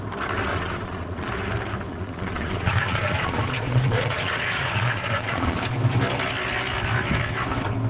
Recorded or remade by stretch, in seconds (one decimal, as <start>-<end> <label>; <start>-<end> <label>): 0.0-0.5 recorded; 0.5-1.3 remade; 1.3-1.9 recorded; 1.9-5.6 remade; 5.6-7.9 recorded